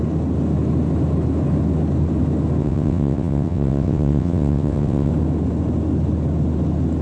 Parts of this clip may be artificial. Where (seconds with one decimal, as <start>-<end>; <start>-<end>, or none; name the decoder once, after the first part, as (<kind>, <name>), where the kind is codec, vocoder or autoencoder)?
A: 2.6-5.1 (vocoder, WaveNeXt)

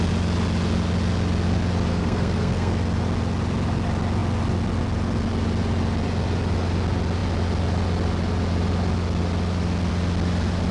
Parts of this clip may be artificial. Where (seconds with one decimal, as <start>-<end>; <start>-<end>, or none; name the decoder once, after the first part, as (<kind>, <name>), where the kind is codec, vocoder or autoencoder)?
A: 1.9-2.7 (codec, SNAC)

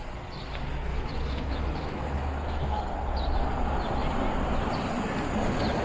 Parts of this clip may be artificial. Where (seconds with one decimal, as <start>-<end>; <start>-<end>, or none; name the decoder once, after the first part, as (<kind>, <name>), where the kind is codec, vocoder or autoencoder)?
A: 0.9-2.8 (autoencoder, DAC-VAE)

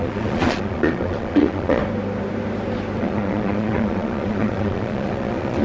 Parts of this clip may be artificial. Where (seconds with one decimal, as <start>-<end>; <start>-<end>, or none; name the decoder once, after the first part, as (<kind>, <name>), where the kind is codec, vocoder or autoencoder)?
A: 0.0-1.8 (vocoder, Vocos); 3.0-5.6

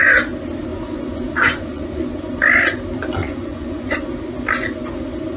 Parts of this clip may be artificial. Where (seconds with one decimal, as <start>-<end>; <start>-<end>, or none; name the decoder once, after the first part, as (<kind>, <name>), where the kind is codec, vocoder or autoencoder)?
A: 0.7-2.3 (vocoder, Vocos); 3.2-4.0

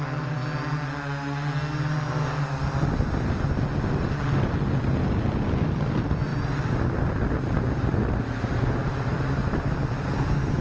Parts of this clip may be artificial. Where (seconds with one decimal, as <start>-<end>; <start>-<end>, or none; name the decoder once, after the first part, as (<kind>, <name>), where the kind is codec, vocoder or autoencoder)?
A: none